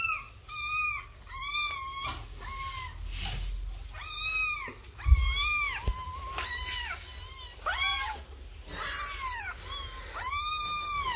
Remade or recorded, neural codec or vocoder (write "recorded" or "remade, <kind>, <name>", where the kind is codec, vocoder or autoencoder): recorded